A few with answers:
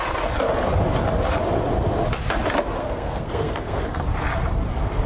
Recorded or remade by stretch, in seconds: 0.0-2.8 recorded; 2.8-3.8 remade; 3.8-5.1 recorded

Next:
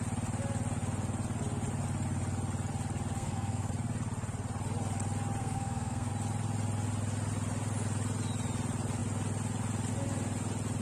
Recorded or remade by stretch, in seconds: 0.0-3.2 recorded; 3.2-3.7 remade; 3.7-5.4 recorded; 5.4-6.1 remade; 6.1-10.8 recorded

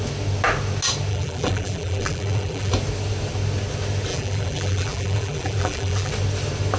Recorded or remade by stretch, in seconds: 0.0-1.1 recorded; 1.1-2.7 remade; 2.7-4.1 recorded; 4.1-6.1 remade; 6.1-6.8 recorded

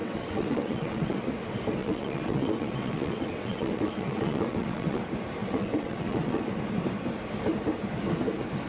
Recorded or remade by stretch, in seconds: 0.0-1.2 remade; 1.2-1.8 recorded; 1.8-5.0 remade; 5.0-5.4 recorded; 5.4-6.5 remade; 6.5-8.7 recorded

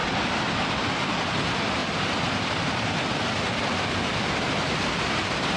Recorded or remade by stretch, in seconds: 0.0-5.6 recorded

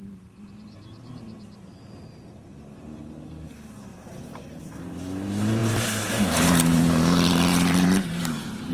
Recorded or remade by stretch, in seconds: 0.0-3.9 recorded; 3.9-4.6 remade; 4.6-5.6 recorded; 5.6-6.2 remade; 6.2-7.5 recorded; 7.5-8.7 remade

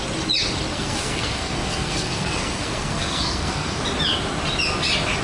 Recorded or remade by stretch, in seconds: 0.0-0.7 recorded; 0.7-3.8 remade; 3.8-5.2 recorded

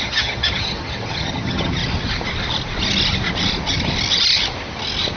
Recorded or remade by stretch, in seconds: 0.0-1.8 remade; 1.8-5.2 recorded